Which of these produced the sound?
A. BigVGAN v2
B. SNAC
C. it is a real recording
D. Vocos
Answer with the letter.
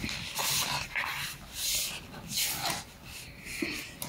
C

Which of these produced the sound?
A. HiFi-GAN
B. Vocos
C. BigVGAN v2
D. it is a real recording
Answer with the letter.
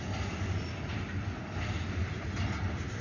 D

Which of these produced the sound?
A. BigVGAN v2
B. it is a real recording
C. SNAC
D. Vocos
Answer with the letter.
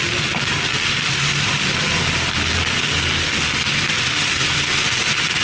B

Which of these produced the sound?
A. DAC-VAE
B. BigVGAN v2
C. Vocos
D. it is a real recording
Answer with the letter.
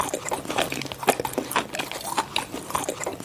D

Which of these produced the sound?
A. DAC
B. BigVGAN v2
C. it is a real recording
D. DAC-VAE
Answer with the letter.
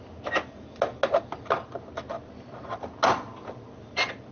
C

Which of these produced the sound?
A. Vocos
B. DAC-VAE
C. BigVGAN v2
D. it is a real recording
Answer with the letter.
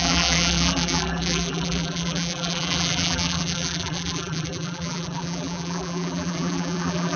C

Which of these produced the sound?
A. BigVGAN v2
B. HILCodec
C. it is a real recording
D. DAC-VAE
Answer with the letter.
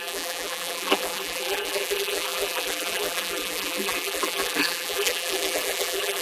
A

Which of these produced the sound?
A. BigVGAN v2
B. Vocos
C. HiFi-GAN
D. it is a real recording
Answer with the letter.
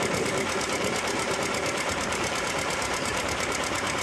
A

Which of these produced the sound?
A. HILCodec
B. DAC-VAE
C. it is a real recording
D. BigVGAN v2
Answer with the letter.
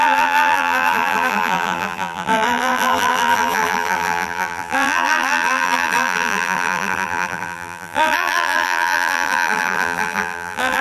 D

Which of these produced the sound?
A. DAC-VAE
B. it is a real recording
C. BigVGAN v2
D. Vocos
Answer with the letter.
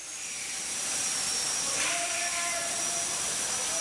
C